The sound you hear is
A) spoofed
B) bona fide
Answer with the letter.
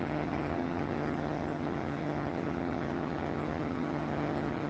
A